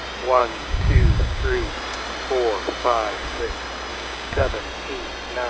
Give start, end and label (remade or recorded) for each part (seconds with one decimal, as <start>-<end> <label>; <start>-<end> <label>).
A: 0.0-0.4 recorded; 0.4-1.7 remade; 1.7-2.8 recorded; 2.8-3.4 remade; 3.4-3.9 recorded; 3.9-4.6 remade; 4.6-5.5 recorded